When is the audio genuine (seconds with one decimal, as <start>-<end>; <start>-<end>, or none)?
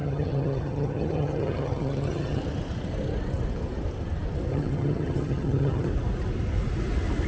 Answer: 2.4-4.5; 5.9-7.3